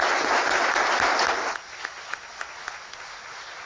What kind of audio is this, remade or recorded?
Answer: recorded